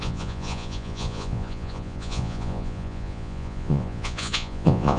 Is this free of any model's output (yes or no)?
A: no